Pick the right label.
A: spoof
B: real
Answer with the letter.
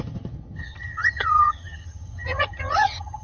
A